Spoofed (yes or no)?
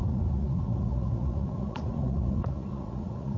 yes